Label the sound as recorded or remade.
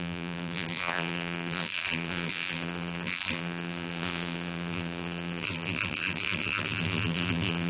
remade